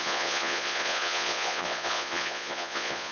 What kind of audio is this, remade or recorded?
remade